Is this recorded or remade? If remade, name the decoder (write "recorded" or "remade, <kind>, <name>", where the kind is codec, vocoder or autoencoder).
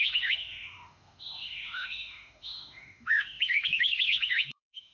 remade, autoencoder, DAC-VAE